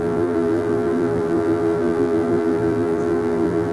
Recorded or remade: remade